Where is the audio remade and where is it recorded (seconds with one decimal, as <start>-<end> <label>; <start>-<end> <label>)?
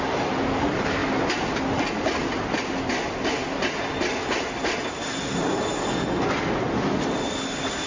0.0-7.9 recorded